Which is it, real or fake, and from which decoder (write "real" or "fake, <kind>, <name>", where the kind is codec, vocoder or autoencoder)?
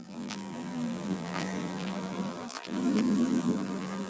fake, vocoder, BigVGAN v2